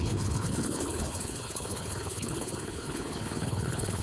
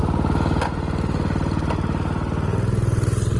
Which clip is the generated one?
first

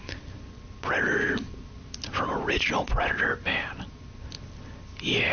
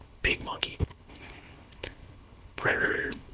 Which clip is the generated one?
second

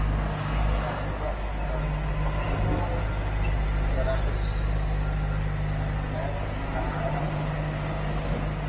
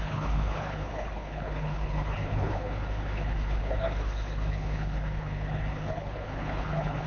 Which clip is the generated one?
second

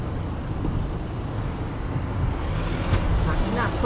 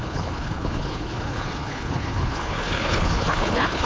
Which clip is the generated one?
second